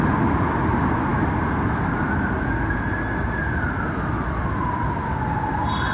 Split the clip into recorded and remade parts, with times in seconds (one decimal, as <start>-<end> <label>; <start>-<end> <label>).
0.0-5.9 recorded